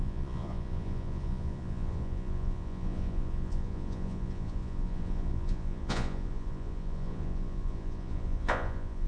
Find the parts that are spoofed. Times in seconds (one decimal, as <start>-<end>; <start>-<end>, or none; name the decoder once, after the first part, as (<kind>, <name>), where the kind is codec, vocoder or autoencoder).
0.0-9.1 (vocoder, Vocos)